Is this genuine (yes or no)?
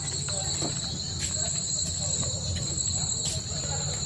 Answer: yes